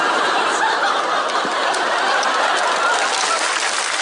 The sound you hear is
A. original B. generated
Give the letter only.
A